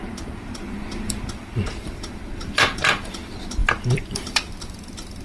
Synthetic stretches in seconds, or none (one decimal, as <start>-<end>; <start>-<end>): 0.0-5.2